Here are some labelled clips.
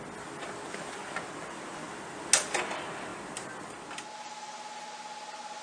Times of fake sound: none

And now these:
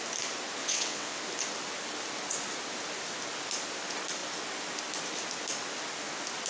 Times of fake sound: 0.6-1.2

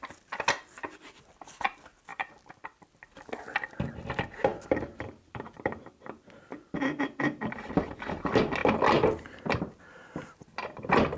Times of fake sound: 2.1-2.9; 4.5-6.0; 8.6-9.6

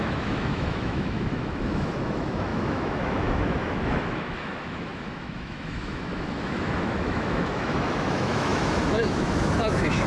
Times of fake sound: 0.0-10.1

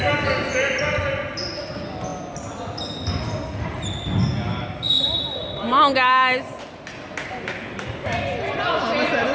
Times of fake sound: none

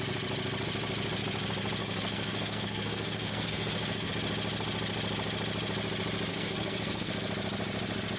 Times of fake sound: 1.8-4.1; 6.3-7.1

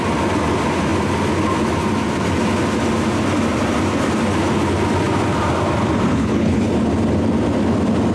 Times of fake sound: 6.1-6.7

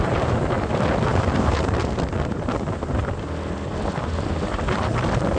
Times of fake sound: none